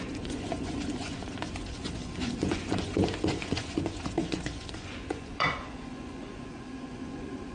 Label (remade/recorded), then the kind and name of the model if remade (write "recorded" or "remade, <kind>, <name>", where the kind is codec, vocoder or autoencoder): remade, vocoder, Vocos